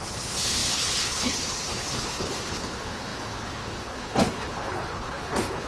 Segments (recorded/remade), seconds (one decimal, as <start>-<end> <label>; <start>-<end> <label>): 0.0-5.7 remade